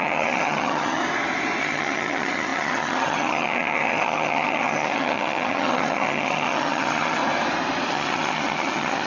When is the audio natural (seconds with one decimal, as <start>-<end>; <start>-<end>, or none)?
1.0-1.6; 7.2-7.9